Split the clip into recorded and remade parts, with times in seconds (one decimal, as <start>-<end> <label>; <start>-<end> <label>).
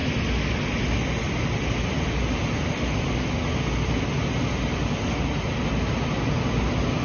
0.0-7.0 recorded